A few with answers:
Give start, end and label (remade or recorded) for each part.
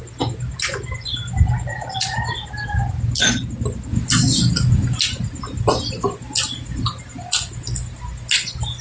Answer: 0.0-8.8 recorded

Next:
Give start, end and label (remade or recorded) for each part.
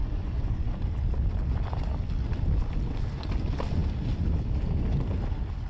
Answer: 0.0-0.7 remade; 0.7-5.7 recorded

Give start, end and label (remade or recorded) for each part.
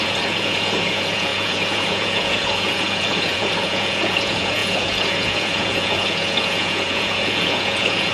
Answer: 0.0-8.1 remade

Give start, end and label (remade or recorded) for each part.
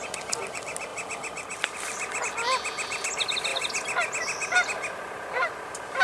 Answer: 0.0-6.0 recorded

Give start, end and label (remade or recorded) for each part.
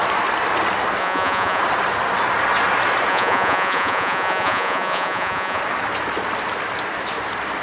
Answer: 0.0-1.0 recorded; 1.0-1.6 remade; 1.6-3.1 recorded; 3.1-5.6 remade; 5.6-7.6 recorded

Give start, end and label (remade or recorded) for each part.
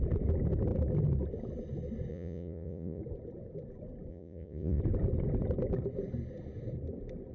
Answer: 0.0-2.1 recorded; 2.1-3.0 remade; 3.0-4.1 recorded; 4.1-4.8 remade; 4.8-7.3 recorded